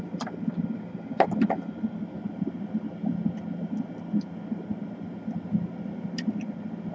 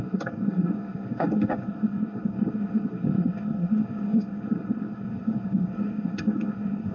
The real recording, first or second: first